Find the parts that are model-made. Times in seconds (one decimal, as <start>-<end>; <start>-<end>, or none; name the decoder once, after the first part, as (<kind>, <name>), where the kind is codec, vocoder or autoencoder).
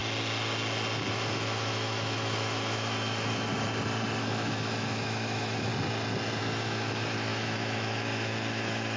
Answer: 1.1-3.5 (autoencoder, DAC-VAE); 4.2-5.7; 6.4-9.0